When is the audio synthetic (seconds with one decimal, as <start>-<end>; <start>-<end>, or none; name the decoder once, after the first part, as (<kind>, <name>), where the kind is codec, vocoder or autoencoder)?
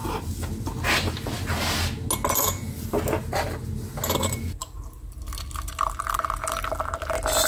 none